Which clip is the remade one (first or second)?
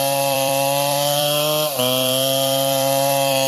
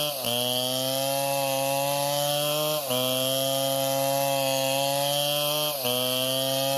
first